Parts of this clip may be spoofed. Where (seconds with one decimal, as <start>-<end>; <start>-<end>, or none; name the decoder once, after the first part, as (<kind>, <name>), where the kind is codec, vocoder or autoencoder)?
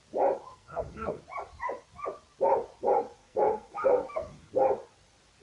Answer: 0.5-1.2 (codec, SNAC); 3.2-4.5